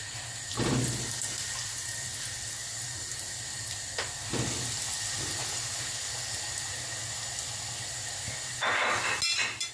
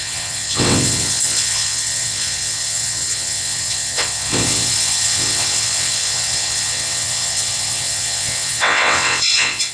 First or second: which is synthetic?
second